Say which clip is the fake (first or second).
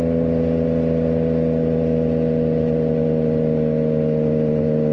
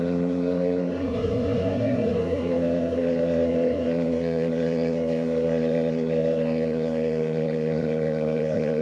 second